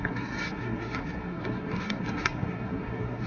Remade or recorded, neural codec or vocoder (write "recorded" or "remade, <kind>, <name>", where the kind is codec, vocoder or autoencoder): remade, codec, SNAC